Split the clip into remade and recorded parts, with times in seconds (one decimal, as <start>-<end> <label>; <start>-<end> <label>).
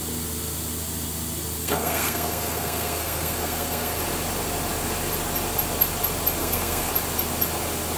0.0-1.6 recorded; 1.6-4.0 remade; 4.0-6.4 recorded; 6.4-6.9 remade; 6.9-8.0 recorded